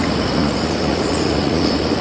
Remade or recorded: remade